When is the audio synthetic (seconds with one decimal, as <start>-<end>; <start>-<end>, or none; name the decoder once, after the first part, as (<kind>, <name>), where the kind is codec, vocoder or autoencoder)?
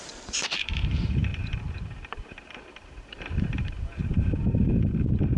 0.0-4.0 (vocoder, BigVGAN v2)